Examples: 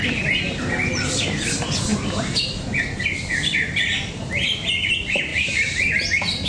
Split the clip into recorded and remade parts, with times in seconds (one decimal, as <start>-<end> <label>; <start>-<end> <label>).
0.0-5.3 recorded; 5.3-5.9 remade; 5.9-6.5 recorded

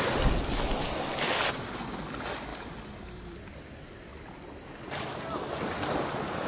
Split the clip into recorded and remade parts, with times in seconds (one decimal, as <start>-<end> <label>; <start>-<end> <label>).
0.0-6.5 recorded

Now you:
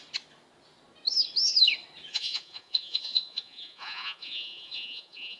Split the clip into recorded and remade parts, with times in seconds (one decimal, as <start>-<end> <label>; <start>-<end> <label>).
0.0-2.1 recorded; 2.1-5.4 remade